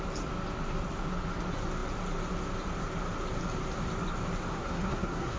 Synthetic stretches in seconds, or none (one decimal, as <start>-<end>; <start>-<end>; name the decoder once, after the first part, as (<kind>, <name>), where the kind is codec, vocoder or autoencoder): 4.5-5.4 (codec, SNAC)

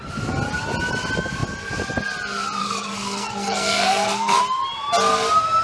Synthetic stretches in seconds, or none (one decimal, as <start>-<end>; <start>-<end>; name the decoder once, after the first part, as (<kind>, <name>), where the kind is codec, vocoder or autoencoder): 2.6-4.4 (codec, SNAC)

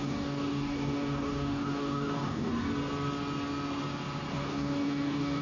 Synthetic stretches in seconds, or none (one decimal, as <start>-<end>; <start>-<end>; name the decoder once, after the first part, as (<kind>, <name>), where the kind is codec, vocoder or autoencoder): 0.0-2.5 (codec, DAC); 4.3-5.4

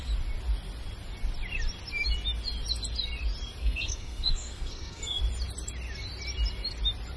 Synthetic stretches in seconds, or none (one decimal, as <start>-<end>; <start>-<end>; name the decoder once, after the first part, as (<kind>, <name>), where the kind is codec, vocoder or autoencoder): 3.6-5.2 (codec, SNAC)

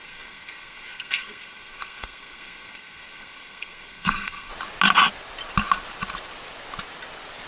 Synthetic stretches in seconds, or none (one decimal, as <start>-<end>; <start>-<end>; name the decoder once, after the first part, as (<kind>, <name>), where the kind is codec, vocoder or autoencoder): 0.0-4.5 (codec, SNAC)

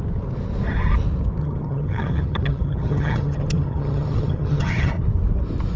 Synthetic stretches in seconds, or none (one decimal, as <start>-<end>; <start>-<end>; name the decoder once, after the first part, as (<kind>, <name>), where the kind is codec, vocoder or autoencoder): 1.4-4.9 (vocoder, HiFi-GAN)